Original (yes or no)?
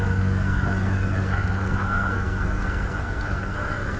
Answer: no